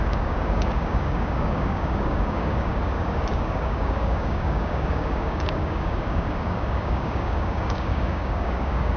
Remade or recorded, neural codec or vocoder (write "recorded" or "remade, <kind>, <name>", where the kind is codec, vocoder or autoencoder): remade, codec, DAC